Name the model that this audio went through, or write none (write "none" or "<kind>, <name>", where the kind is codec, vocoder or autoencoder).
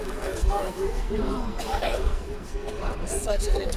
codec, SNAC